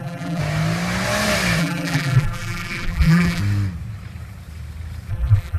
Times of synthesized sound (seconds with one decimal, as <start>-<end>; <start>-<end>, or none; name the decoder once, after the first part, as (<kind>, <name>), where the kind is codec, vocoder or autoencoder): 0.0-0.4 (vocoder, BigVGAN v2); 1.6-3.4; 5.1-5.6